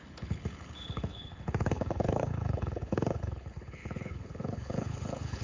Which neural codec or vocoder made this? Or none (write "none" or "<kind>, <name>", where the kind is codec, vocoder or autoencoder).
codec, HILCodec